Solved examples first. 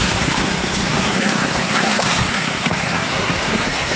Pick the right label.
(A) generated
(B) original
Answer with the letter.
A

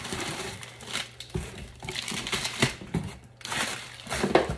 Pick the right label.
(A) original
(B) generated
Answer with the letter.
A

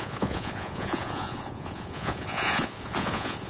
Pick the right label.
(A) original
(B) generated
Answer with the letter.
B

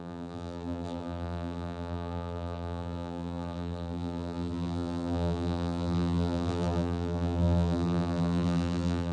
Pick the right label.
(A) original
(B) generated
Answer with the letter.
B